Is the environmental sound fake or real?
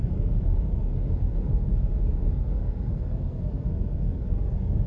fake